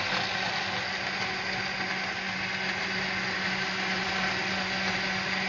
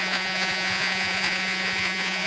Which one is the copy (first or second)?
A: second